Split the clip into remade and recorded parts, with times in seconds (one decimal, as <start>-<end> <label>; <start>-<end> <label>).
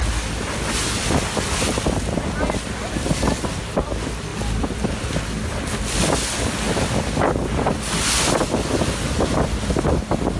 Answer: 0.0-10.4 recorded